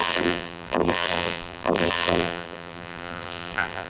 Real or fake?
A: fake